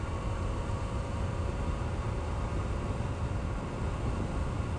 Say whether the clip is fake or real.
real